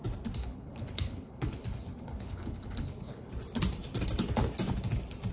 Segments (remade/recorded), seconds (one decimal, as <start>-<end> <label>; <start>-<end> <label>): 0.0-0.4 recorded; 0.4-3.3 remade; 3.3-5.3 recorded

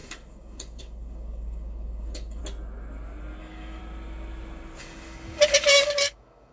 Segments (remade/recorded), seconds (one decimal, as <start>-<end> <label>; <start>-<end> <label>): 0.0-2.4 remade; 2.4-3.4 recorded; 3.4-3.8 remade; 3.8-4.8 recorded; 4.8-6.5 remade